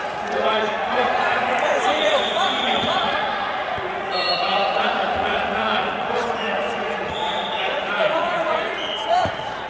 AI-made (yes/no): yes